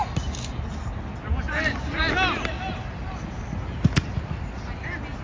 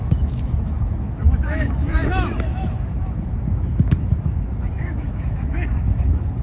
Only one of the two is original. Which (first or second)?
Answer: first